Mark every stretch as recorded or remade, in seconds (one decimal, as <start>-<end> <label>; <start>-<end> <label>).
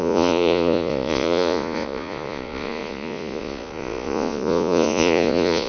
0.0-5.7 remade